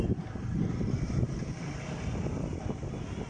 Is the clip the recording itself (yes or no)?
yes